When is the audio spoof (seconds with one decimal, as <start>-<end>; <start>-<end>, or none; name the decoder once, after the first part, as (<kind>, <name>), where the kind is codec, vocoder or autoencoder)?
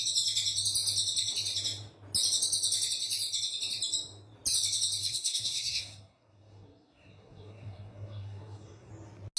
5.0-8.9 (codec, SNAC)